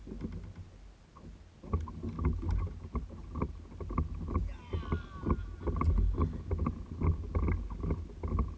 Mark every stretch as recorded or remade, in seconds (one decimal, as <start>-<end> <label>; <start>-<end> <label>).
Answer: 0.0-8.6 recorded